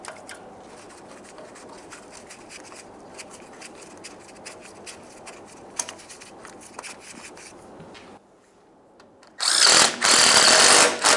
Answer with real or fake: real